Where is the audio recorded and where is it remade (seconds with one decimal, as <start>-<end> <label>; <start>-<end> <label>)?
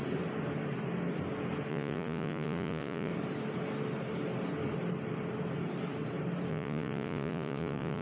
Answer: 0.0-1.7 recorded; 1.7-3.1 remade; 3.1-6.5 recorded; 6.5-8.0 remade